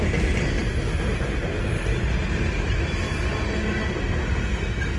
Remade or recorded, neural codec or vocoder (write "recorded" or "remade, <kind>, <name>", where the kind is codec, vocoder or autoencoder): recorded